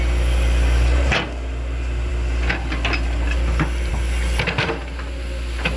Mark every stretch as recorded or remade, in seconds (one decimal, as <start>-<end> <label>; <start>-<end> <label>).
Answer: 0.0-5.8 recorded